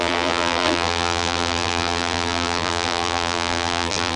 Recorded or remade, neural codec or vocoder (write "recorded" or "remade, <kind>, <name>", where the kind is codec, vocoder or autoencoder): remade, vocoder, BigVGAN v2